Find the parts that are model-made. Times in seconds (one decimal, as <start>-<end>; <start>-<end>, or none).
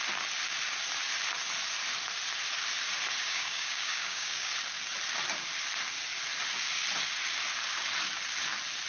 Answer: 3.2-4.5